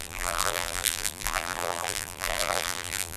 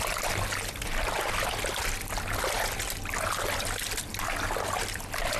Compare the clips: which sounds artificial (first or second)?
first